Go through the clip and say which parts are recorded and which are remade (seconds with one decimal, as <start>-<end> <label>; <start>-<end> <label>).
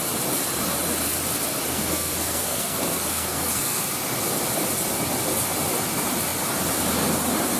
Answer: 0.0-1.7 recorded; 1.7-3.8 remade; 3.8-7.6 recorded